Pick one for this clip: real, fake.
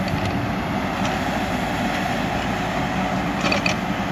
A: real